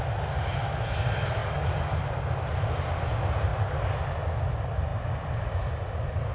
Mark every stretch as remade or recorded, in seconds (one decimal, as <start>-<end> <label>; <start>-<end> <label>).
0.0-1.4 recorded; 1.4-2.0 remade; 2.0-6.3 recorded